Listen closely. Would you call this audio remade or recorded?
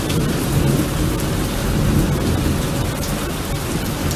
recorded